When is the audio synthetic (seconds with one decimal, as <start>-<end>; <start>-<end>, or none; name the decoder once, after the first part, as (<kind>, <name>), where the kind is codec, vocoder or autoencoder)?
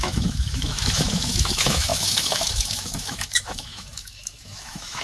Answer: 0.0-5.0 (autoencoder, DAC-VAE)